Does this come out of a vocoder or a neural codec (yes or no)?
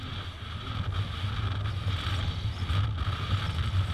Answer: no